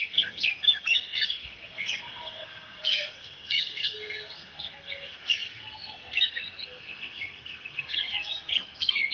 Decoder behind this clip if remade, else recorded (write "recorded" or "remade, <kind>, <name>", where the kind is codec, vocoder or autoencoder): remade, codec, SNAC